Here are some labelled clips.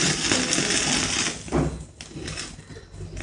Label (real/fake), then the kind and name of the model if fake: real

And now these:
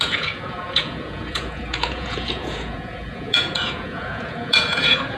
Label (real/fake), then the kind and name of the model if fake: fake, vocoder, Vocos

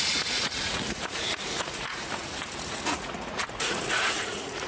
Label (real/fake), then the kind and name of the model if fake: fake, vocoder, Vocos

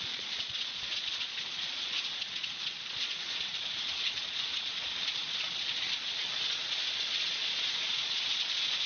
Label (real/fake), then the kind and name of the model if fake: fake, vocoder, Vocos